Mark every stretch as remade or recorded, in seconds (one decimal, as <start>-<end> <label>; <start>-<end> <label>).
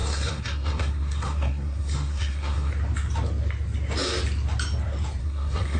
0.0-2.7 remade; 2.7-5.2 recorded; 5.2-5.8 remade